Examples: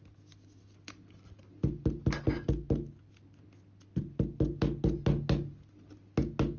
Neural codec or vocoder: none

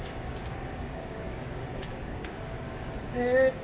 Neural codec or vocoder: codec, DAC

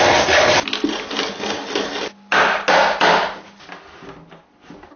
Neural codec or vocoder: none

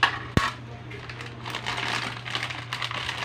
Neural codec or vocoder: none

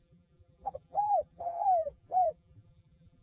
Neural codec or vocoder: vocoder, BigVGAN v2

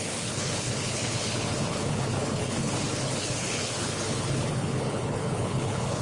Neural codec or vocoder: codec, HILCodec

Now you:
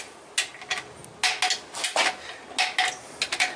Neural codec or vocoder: none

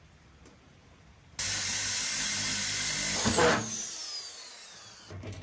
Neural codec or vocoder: none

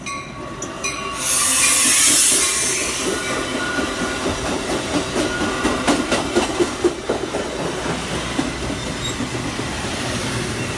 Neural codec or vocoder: none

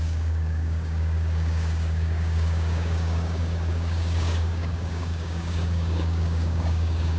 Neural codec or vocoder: codec, DAC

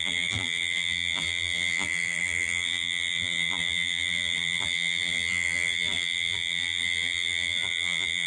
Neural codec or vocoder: vocoder, BigVGAN v2